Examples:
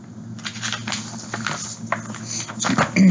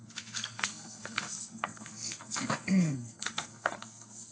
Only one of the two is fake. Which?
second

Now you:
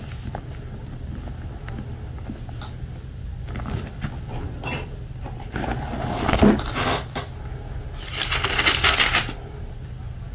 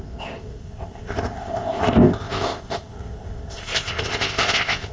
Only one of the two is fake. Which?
second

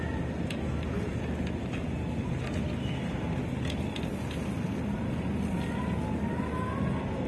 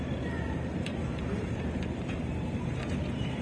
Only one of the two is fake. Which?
second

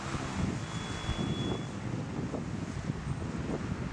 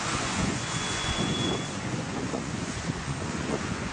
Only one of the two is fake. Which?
second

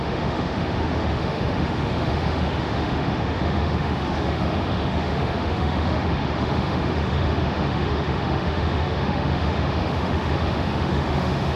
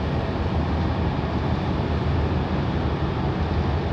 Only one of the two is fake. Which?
first